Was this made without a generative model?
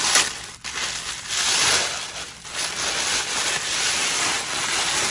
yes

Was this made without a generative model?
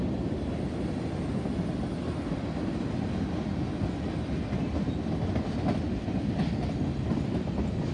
yes